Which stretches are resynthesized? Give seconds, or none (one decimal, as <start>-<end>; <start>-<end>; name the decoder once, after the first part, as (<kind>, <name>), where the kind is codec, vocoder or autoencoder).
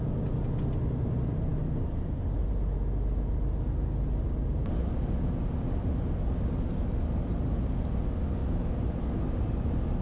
none